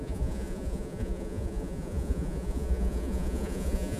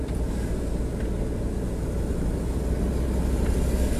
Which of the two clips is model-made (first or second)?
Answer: first